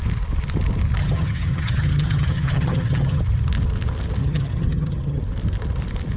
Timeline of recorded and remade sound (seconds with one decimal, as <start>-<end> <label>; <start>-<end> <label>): 0.0-1.0 recorded; 1.0-3.2 remade; 3.2-4.2 recorded; 4.2-5.2 remade; 5.2-6.2 recorded